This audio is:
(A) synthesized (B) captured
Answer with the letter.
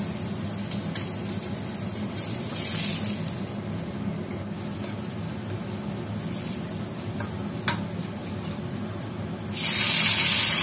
B